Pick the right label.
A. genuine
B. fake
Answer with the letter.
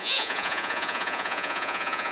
B